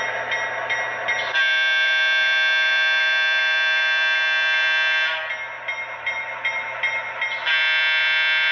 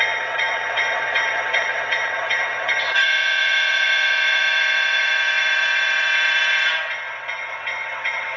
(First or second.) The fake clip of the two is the second